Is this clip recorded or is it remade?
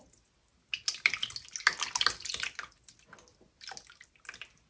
recorded